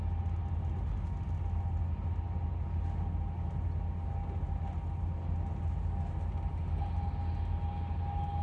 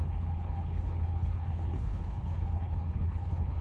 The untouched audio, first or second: first